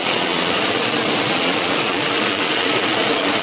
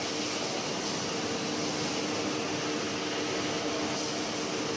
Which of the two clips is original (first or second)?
second